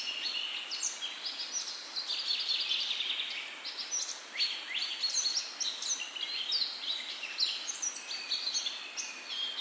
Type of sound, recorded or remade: recorded